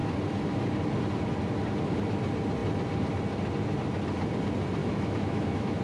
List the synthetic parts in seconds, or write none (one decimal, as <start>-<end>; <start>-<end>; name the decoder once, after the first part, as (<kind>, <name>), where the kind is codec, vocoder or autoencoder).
4.8-5.8 (autoencoder, DAC-VAE)